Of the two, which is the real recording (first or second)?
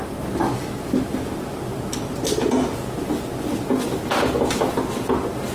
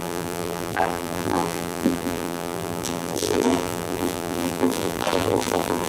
first